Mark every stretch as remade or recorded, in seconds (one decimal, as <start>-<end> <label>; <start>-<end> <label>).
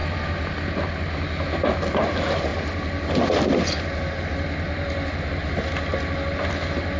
0.0-7.0 recorded